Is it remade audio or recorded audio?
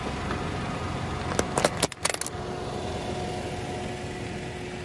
recorded